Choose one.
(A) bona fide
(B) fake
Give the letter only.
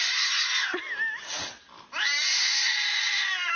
A